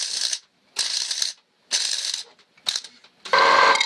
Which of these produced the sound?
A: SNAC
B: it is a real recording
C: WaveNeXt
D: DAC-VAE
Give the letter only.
B